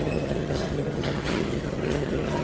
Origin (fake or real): fake